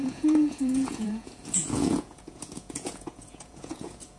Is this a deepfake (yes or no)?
yes